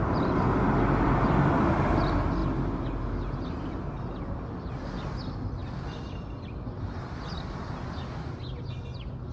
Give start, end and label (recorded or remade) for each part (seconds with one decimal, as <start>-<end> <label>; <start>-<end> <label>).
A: 0.0-9.3 recorded